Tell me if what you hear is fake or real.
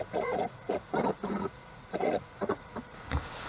fake